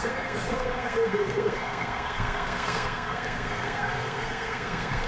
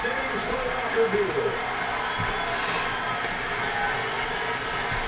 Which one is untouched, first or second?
second